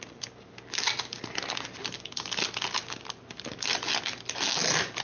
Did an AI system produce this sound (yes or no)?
no